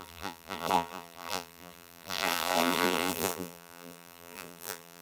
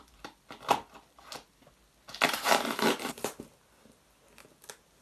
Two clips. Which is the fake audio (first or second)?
first